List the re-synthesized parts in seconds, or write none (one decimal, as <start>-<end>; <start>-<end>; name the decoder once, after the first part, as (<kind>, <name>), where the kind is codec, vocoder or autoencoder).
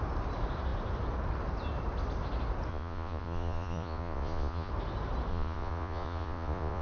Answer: 2.7-4.7 (vocoder, Vocos); 5.3-6.8